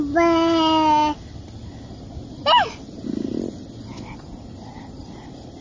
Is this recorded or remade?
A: recorded